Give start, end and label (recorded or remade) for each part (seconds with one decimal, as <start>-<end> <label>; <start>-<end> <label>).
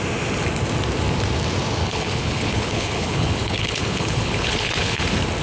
0.0-1.8 recorded; 1.8-5.0 remade; 5.0-5.4 recorded